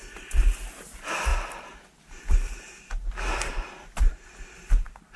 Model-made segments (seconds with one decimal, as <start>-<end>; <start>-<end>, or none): none